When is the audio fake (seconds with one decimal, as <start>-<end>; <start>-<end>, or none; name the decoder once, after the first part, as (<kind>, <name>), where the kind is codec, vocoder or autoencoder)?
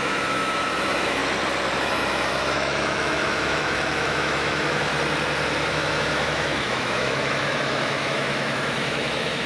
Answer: 0.0-1.2 (autoencoder, DAC-VAE); 1.8-4.9; 5.7-9.5